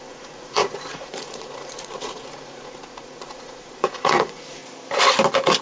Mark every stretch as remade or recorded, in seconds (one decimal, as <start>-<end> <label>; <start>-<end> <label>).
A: 0.0-4.6 remade; 4.6-5.6 recorded

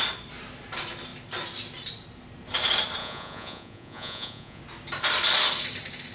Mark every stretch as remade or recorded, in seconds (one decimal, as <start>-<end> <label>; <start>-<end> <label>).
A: 0.0-3.0 recorded; 3.0-4.6 remade; 4.6-6.1 recorded

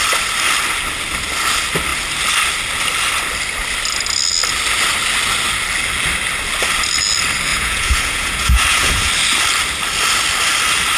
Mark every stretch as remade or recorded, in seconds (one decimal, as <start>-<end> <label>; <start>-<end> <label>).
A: 0.0-7.5 recorded; 7.5-9.1 remade; 9.1-11.0 recorded